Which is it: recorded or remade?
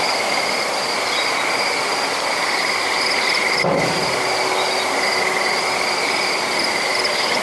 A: recorded